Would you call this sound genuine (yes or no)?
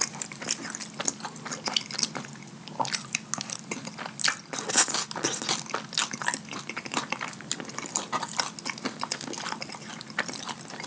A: yes